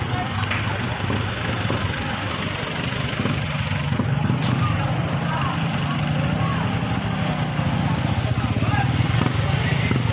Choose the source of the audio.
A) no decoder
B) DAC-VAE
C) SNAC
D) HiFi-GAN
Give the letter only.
A